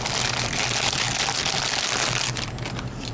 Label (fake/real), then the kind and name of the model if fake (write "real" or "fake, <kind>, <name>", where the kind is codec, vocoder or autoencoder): real